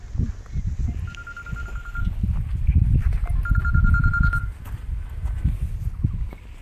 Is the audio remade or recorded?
recorded